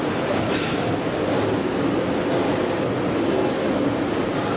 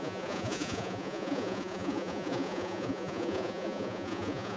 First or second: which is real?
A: first